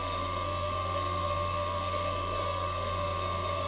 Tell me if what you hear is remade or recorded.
remade